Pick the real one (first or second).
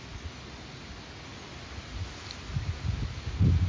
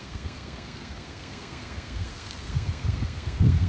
first